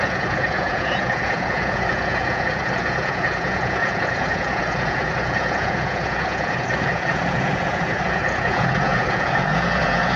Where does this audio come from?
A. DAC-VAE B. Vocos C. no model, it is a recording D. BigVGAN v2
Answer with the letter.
B